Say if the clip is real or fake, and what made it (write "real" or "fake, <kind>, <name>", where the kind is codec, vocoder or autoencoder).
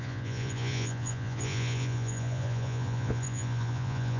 fake, vocoder, Vocos